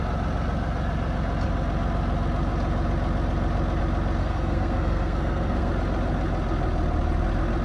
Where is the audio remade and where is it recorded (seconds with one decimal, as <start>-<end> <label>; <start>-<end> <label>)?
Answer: 0.0-4.2 recorded; 4.2-5.7 remade; 5.7-7.6 recorded